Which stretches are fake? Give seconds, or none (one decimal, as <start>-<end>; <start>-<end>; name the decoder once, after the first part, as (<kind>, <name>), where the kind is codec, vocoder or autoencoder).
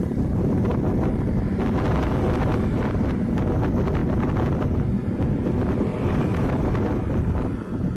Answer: 5.9-6.5 (vocoder, BigVGAN v2)